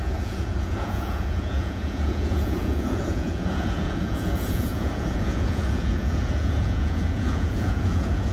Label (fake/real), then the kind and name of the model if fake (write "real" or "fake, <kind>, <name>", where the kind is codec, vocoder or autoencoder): fake, vocoder, Vocos